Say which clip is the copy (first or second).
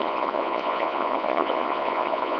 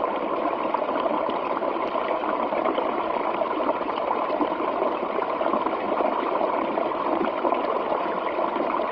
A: first